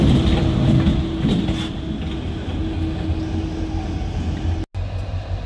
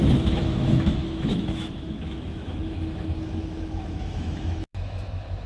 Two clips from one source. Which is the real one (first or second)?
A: first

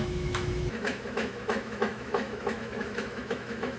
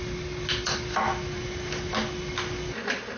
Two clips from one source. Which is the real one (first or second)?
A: second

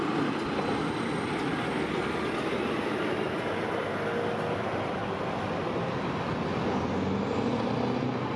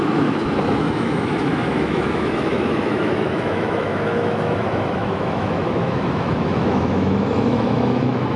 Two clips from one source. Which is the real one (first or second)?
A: first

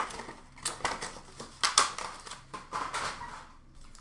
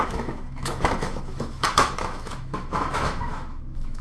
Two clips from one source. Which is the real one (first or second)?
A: first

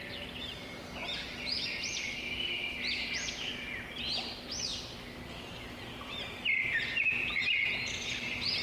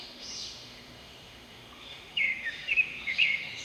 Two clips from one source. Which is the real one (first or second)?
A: first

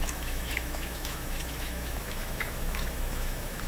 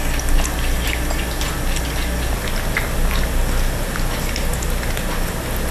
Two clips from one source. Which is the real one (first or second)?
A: second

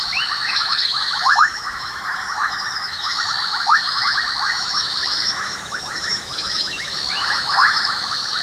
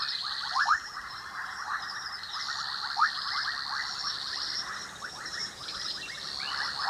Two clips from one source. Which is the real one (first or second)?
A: second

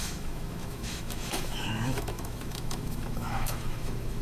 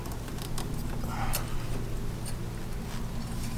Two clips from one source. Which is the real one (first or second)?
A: second